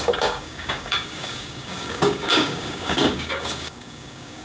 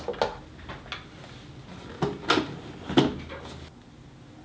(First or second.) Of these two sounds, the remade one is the first